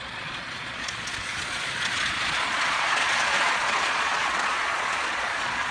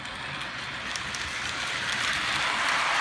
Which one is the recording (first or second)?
second